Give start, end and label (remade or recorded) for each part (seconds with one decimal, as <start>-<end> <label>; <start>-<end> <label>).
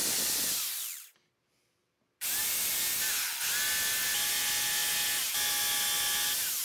0.0-2.0 remade; 2.0-2.4 recorded; 2.4-3.1 remade; 3.1-6.6 recorded